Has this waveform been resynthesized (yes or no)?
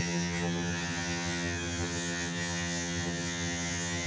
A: yes